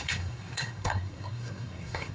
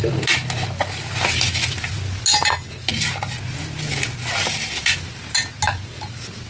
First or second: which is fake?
first